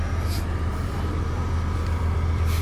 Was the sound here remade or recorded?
remade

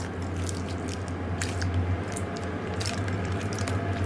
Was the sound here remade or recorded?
recorded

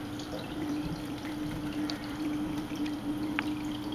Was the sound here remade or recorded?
remade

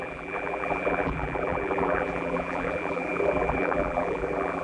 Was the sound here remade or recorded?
remade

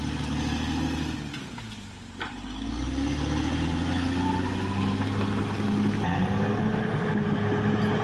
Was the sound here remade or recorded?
recorded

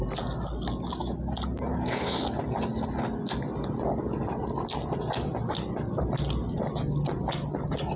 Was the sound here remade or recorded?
recorded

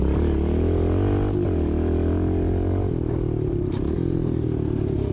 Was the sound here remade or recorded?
recorded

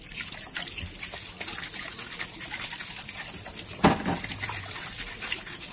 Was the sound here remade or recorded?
recorded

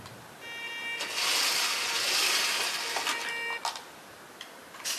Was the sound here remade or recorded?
recorded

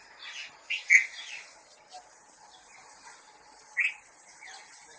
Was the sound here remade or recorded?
recorded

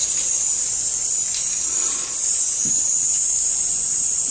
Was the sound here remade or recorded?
recorded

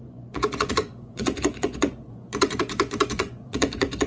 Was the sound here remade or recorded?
remade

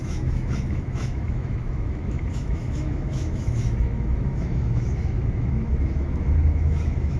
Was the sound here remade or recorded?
remade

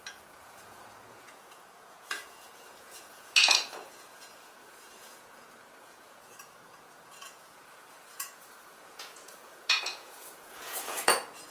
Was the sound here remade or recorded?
remade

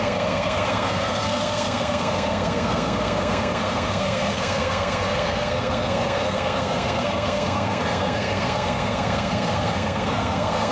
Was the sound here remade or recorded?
remade